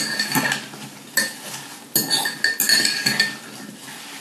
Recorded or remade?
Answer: recorded